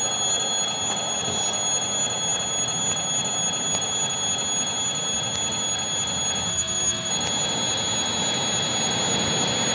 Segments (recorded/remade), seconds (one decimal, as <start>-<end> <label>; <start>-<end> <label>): 0.0-6.5 recorded; 6.5-7.1 remade; 7.1-9.7 recorded